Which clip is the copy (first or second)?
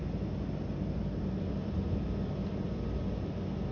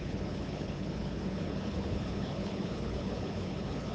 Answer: second